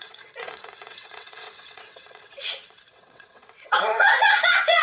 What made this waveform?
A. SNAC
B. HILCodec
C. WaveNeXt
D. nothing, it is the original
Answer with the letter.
C